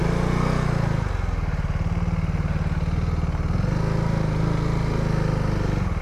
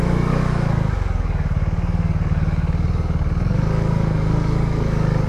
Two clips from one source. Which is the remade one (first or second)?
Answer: second